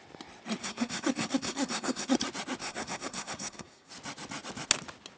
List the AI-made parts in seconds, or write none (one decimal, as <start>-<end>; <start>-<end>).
0.6-2.1; 2.6-3.9